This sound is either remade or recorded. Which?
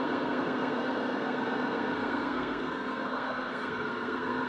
remade